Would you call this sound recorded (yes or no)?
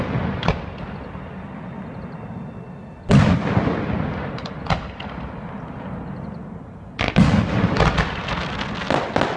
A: yes